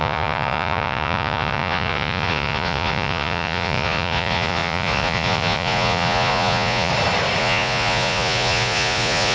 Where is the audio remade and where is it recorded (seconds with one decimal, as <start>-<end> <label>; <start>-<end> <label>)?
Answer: 0.0-6.9 remade; 6.9-7.4 recorded; 7.4-9.3 remade